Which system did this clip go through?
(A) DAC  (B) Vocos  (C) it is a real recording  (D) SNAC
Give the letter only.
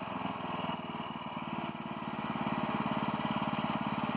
C